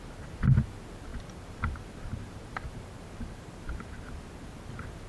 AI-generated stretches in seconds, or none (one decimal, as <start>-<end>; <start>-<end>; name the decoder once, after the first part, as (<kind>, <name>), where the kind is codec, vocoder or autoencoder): 1.1-4.2 (vocoder, BigVGAN v2)